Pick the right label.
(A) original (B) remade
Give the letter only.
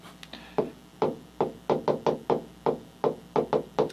A